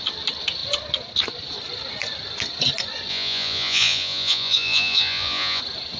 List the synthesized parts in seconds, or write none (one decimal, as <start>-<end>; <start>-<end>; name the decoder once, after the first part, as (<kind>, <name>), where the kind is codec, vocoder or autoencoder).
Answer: 3.1-5.6 (vocoder, Vocos)